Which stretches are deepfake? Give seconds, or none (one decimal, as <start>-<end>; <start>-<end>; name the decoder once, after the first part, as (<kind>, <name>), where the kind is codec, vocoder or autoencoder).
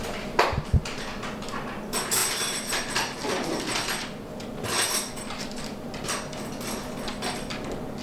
none